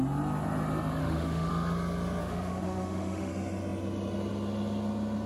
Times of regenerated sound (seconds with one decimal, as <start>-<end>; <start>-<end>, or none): 1.0-1.5; 2.2-3.3